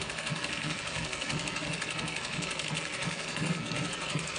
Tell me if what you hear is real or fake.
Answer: fake